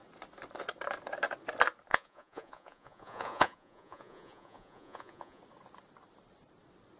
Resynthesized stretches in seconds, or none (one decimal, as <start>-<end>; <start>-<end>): 1.9-5.4